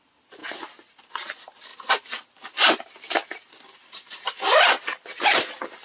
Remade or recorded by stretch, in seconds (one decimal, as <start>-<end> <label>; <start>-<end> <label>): 0.0-1.7 recorded; 1.7-5.2 remade; 5.2-5.8 recorded